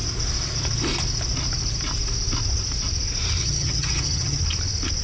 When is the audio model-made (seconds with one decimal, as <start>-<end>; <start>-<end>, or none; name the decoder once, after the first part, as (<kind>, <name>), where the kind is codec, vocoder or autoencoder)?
3.4-4.4 (vocoder, HiFi-GAN)